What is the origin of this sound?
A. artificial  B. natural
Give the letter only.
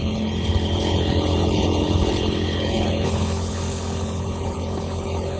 A